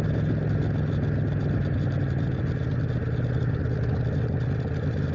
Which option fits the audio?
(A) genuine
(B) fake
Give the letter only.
A